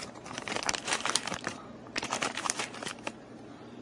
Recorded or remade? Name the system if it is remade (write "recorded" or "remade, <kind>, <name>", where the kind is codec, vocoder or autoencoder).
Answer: remade, vocoder, BigVGAN v2